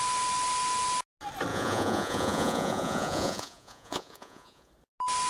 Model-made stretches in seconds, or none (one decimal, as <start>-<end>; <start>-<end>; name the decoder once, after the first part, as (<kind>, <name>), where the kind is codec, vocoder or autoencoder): 1.5-4.7 (vocoder, Vocos)